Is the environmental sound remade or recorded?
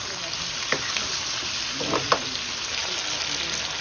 recorded